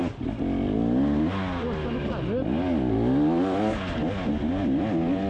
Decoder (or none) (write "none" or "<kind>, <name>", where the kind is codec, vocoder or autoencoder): none